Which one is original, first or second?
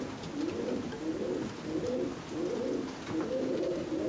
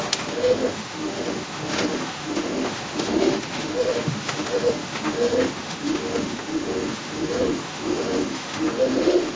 first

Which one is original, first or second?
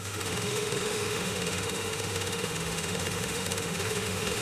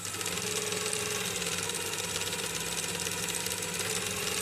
second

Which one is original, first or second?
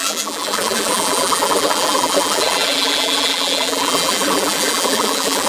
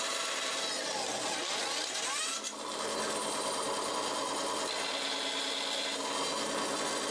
second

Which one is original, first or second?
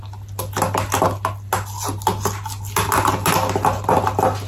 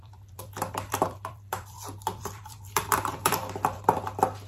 first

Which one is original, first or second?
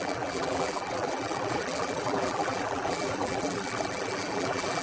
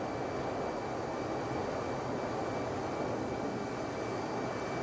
second